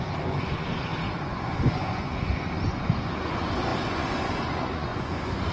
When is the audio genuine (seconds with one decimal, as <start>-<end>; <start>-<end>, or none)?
none

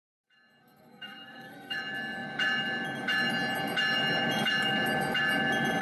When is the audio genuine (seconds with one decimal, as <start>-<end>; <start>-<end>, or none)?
0.0-0.6; 1.8-5.8